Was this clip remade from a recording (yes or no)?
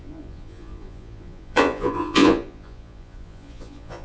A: yes